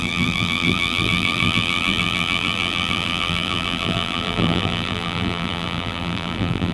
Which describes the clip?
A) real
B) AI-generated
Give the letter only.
B